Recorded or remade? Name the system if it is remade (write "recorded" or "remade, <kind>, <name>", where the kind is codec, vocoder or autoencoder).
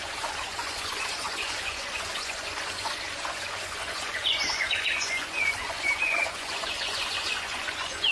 remade, vocoder, Vocos